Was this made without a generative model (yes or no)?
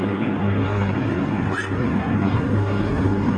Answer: no